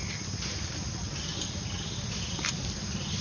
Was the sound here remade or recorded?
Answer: recorded